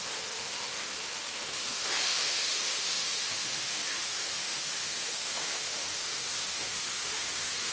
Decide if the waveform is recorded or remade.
remade